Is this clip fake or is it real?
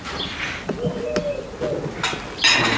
real